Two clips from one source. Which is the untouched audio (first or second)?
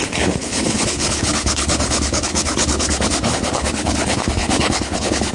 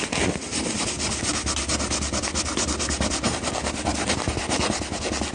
second